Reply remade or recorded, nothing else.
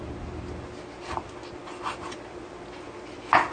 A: recorded